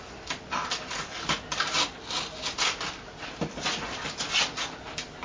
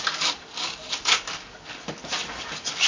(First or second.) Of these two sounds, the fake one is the second